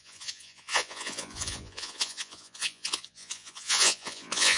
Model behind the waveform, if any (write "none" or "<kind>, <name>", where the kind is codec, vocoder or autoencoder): vocoder, Vocos